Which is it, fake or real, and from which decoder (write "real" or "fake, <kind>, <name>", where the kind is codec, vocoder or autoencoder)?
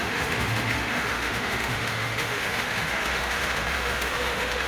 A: fake, autoencoder, DAC-VAE